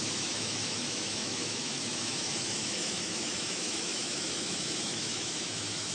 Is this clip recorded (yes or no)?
no